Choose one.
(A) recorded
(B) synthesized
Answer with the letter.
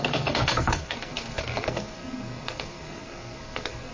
B